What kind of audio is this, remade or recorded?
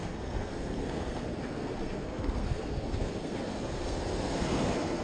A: remade